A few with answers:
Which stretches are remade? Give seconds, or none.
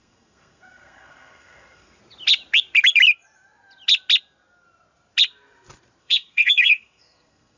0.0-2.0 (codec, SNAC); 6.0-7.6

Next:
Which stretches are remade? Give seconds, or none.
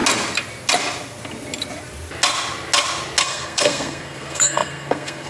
3.2-5.3 (codec, SNAC)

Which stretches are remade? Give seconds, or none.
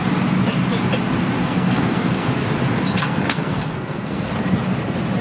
1.4-2.3 (codec, SNAC); 3.0-4.3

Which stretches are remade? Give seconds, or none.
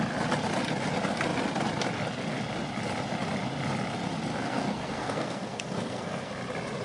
4.3-6.3 (codec, SNAC)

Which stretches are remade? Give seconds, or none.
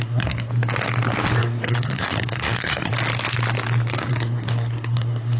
0.0-0.5 (codec, SNAC); 1.4-2.9; 4.1-5.4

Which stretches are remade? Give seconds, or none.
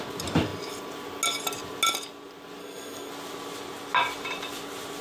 2.6-3.1 (codec, SNAC)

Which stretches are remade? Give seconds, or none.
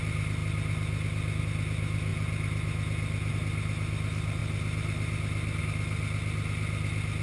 none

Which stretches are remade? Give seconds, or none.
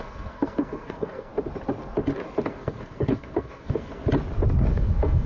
0.0-1.3 (codec, SNAC); 2.5-4.0; 4.7-5.3